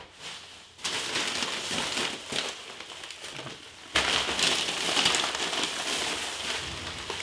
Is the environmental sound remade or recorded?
recorded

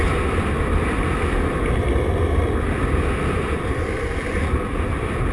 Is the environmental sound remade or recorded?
recorded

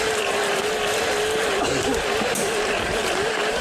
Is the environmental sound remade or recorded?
remade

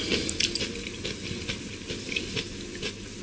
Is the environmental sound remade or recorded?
recorded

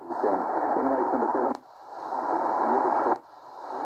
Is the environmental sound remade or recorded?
remade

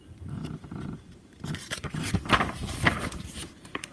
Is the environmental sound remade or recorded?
remade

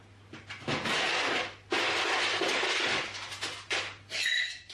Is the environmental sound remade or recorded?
recorded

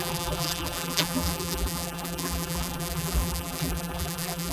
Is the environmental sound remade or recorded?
remade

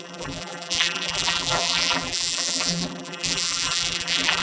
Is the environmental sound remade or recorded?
remade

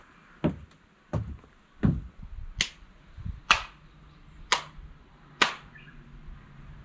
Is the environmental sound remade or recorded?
recorded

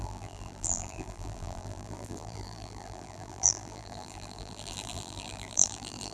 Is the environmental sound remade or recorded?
remade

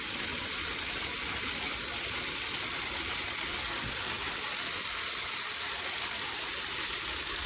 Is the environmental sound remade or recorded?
recorded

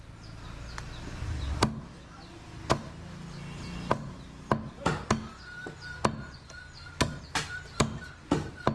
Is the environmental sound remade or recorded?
recorded